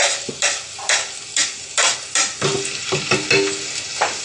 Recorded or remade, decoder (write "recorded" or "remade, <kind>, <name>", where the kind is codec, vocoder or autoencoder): recorded